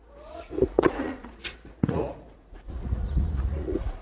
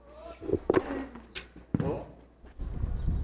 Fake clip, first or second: first